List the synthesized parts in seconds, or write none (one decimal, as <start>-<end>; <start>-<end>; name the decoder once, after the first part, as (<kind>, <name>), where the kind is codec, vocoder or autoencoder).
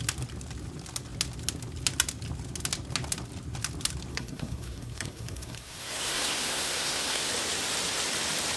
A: 4.1-7.3 (codec, SNAC)